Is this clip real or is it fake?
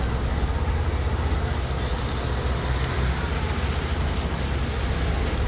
real